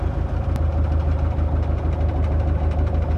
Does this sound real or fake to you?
real